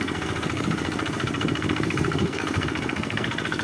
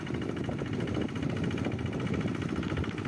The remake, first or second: first